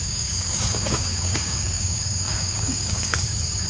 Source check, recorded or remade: remade